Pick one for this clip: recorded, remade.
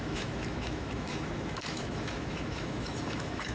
remade